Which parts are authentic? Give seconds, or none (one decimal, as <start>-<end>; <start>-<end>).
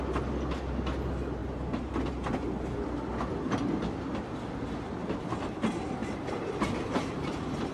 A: 0.0-7.7